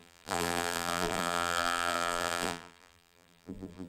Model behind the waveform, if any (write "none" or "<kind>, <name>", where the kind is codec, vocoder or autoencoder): vocoder, BigVGAN v2